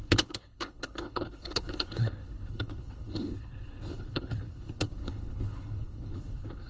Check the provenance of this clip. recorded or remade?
remade